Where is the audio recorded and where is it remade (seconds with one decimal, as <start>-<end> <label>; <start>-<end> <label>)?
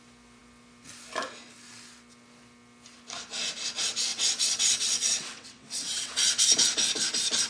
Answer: 0.0-4.1 recorded; 4.1-6.3 remade; 6.3-7.5 recorded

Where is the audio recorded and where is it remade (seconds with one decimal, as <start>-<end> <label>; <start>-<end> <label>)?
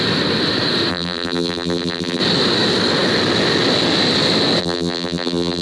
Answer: 0.0-0.9 recorded; 0.9-2.2 remade; 2.2-4.6 recorded; 4.6-5.6 remade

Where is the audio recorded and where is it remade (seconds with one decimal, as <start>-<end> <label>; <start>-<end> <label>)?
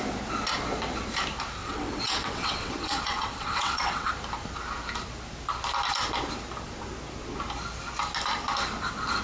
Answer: 0.0-1.6 recorded; 1.6-4.1 remade; 4.1-9.2 recorded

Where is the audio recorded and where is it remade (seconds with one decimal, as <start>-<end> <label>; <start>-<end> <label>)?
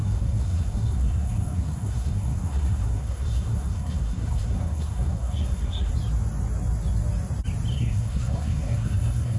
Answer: 0.0-5.9 remade; 5.9-7.7 recorded; 7.7-9.4 remade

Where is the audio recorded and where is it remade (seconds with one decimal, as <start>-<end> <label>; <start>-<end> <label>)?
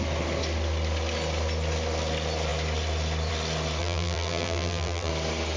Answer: 0.0-3.8 recorded; 3.8-5.1 remade; 5.1-5.6 recorded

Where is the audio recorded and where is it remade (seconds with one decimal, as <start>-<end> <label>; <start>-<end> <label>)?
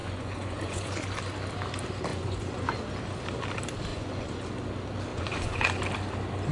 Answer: 0.0-0.9 remade; 0.9-2.1 recorded; 2.1-2.8 remade; 2.8-3.9 recorded; 3.9-4.5 remade; 4.5-5.1 recorded; 5.1-5.8 remade; 5.8-6.5 recorded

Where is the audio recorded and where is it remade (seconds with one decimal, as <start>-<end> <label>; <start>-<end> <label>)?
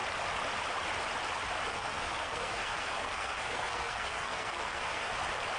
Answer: 0.0-1.7 recorded; 1.7-5.1 remade; 5.1-5.6 recorded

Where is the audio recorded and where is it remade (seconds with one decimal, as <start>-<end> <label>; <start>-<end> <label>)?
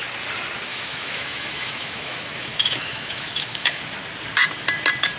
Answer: 0.0-0.7 recorded; 0.7-3.8 remade; 3.8-5.2 recorded